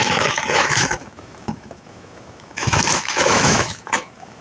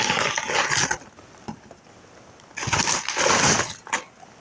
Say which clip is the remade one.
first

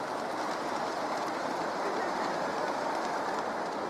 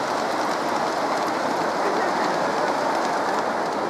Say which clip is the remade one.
first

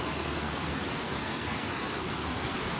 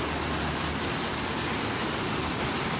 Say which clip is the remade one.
first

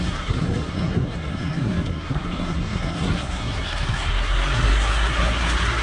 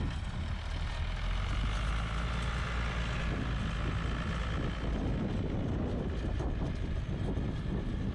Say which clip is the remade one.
first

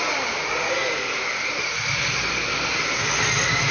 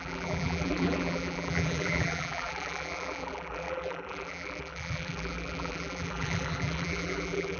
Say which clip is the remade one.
second